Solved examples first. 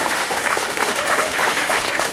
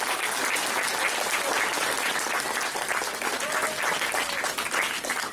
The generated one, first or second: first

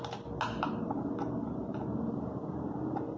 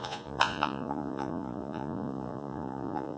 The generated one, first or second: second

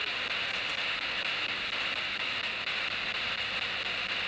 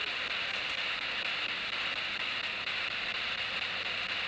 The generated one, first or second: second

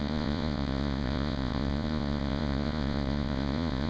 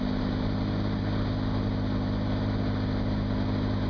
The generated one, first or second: first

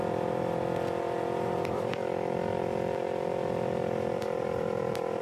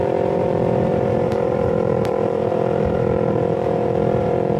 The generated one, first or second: second